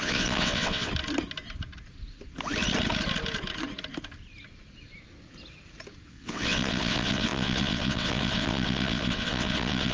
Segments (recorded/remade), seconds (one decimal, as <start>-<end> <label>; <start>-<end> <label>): 0.0-0.9 remade; 0.9-6.1 recorded; 6.1-9.9 remade